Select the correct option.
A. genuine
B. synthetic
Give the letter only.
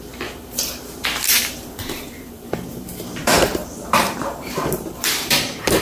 B